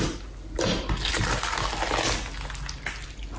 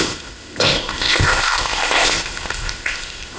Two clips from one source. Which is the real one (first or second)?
first